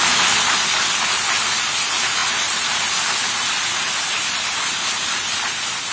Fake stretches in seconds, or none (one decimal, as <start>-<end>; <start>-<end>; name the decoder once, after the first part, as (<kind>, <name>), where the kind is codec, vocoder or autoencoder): none